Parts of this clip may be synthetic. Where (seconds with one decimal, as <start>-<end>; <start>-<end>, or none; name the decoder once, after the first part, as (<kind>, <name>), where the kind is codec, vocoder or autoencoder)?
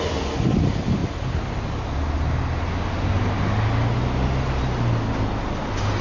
none